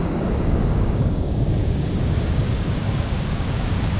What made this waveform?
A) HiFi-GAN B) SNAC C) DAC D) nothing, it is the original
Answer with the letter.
C